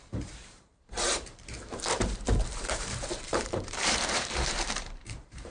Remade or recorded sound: remade